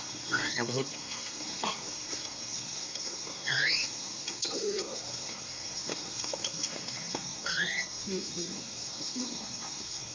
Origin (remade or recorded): remade